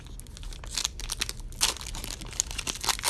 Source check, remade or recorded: recorded